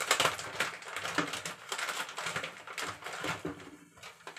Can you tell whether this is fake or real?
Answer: real